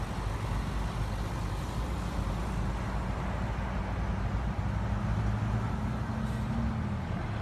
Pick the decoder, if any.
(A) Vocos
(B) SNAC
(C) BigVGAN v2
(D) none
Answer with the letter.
D